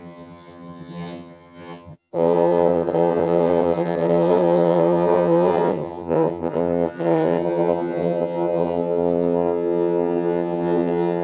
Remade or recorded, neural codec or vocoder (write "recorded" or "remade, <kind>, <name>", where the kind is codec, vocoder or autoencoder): remade, vocoder, HiFi-GAN